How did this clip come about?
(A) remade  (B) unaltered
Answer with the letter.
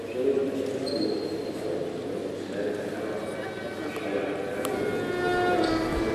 B